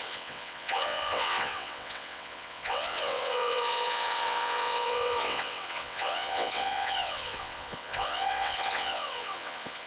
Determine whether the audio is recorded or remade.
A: remade